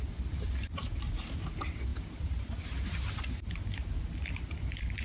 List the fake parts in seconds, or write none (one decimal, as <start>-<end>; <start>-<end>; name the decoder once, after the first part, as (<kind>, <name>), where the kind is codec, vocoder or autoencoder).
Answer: 1.9-3.5 (vocoder, BigVGAN v2)